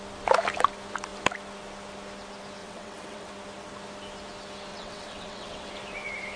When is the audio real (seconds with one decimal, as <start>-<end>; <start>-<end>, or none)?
0.0-2.6; 3.3-4.7; 5.7-6.4